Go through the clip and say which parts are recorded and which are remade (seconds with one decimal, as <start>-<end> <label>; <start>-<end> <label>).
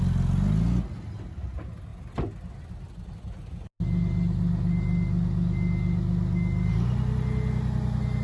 0.0-8.2 recorded